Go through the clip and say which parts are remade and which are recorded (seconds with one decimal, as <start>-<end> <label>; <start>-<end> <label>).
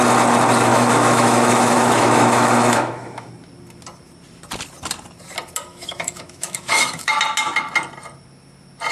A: 0.0-0.7 recorded; 0.7-3.3 remade; 3.3-5.7 recorded; 5.7-7.2 remade; 7.2-8.9 recorded